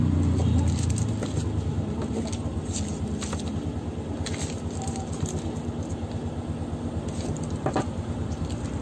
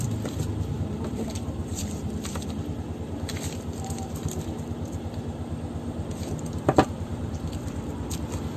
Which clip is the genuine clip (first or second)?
first